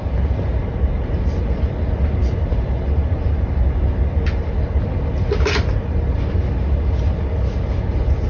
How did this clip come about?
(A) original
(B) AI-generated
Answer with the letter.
A